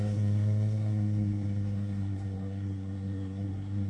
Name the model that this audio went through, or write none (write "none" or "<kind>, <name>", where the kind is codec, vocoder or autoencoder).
codec, SNAC